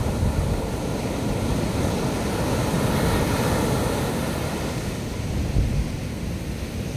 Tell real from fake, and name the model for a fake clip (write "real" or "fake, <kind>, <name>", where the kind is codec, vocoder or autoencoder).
real